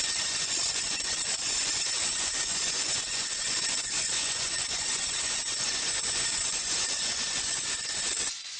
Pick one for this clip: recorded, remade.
remade